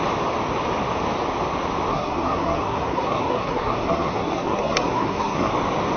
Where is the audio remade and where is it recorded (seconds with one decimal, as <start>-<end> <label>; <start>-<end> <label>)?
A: 0.0-1.9 recorded; 1.9-5.5 remade; 5.5-6.0 recorded